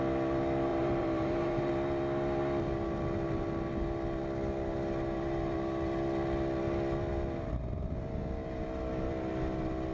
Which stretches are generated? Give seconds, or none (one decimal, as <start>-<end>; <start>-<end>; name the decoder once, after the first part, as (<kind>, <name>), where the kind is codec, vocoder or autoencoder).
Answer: 0.7-1.7 (vocoder, BigVGAN v2)